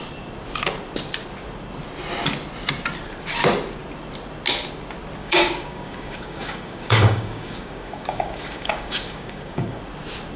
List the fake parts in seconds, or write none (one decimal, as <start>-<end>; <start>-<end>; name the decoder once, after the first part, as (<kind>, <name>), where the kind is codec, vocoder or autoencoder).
5.2-9.8 (codec, DAC)